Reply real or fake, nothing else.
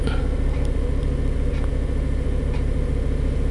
real